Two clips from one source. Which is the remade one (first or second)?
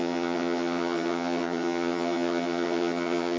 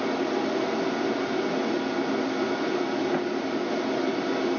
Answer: first